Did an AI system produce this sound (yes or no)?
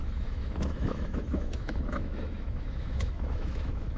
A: yes